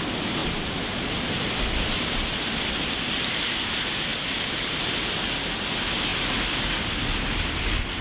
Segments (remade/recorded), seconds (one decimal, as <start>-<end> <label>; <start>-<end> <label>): 0.0-0.4 recorded; 0.4-1.9 remade; 1.9-4.1 recorded; 4.1-4.9 remade; 4.9-8.0 recorded

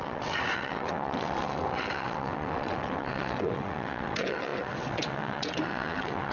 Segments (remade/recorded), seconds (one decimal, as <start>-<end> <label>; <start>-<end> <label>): 0.0-6.3 remade